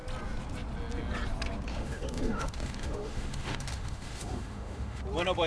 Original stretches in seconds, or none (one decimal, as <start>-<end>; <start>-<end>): 0.0-1.7; 5.0-5.5